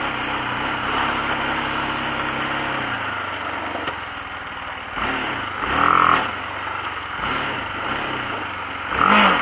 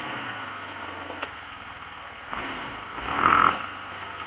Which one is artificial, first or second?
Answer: second